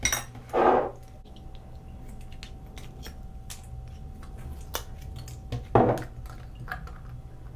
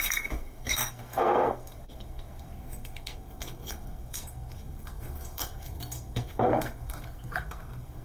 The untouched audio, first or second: first